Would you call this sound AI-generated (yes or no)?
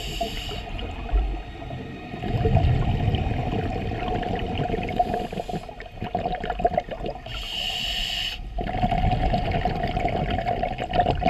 no